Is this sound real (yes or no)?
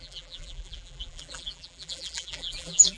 no